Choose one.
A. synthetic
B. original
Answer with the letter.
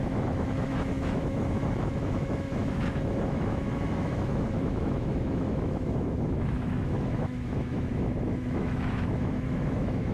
A